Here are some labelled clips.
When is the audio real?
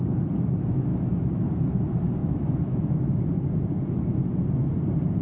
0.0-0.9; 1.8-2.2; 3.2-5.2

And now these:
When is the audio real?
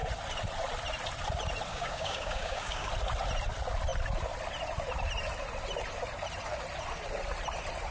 0.0-1.7; 2.9-7.9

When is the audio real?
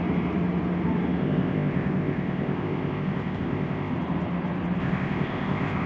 0.0-1.2; 3.9-4.8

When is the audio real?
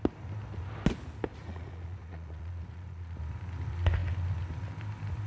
0.0-1.3; 3.2-5.3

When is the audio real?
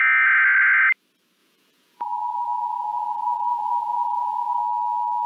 0.0-1.4; 4.6-5.3